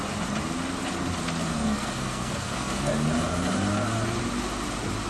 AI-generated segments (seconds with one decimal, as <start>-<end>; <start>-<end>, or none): 1.5-2.9